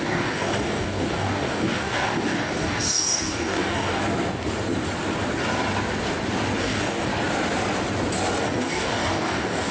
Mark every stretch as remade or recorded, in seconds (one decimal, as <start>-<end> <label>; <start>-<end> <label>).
0.0-4.0 remade; 4.0-6.6 recorded; 6.6-7.1 remade; 7.1-8.4 recorded; 8.4-9.7 remade

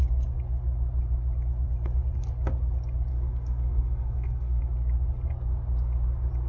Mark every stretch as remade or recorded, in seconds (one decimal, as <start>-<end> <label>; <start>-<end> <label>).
0.0-3.1 recorded; 3.1-4.6 remade; 4.6-6.5 recorded

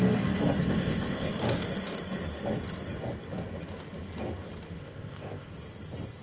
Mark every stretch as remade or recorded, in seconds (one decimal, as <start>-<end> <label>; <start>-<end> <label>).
0.0-0.6 recorded; 0.6-1.3 remade; 1.3-4.8 recorded; 4.8-5.5 remade; 5.5-6.2 recorded

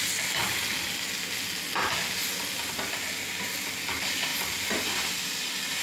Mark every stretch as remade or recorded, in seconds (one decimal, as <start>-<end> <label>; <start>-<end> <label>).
0.0-5.8 recorded

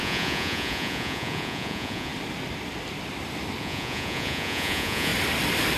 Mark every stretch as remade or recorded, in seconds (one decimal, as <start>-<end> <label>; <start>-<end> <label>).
0.0-2.1 remade; 2.1-3.6 recorded; 3.6-5.1 remade; 5.1-5.8 recorded

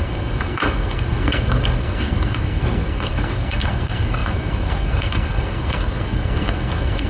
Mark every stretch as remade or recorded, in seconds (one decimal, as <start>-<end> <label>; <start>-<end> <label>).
0.0-7.1 remade

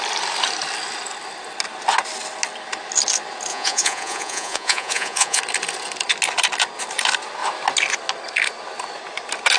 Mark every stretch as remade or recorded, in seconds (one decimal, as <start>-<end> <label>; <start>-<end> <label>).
0.0-3.5 recorded; 3.5-5.4 remade; 5.4-9.6 recorded